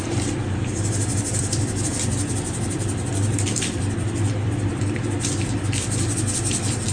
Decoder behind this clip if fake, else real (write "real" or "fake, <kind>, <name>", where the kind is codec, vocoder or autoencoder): fake, vocoder, BigVGAN v2